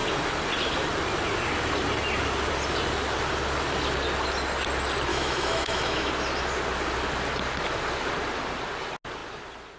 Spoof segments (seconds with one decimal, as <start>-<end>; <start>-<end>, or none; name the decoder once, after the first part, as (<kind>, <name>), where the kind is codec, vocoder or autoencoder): 5.1-6.1 (autoencoder, DAC-VAE)